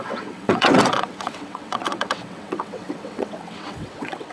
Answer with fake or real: fake